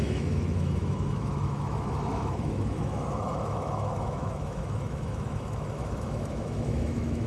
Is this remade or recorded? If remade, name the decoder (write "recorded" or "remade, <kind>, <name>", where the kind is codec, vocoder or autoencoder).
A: remade, autoencoder, DAC-VAE